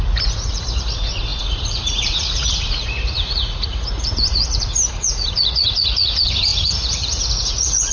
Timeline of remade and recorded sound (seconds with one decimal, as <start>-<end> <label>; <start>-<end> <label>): 0.0-7.9 remade